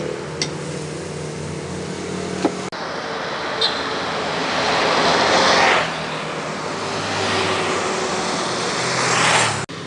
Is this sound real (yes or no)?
yes